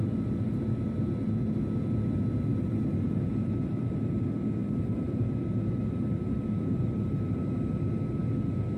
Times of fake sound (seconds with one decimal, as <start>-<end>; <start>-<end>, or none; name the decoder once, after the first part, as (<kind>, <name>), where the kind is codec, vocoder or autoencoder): 2.5-4.0 (vocoder, BigVGAN v2); 4.6-7.4